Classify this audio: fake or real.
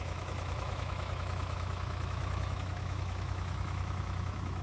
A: fake